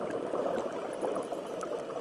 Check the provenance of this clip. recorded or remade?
recorded